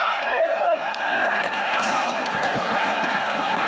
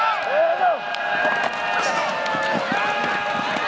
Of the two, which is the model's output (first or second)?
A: first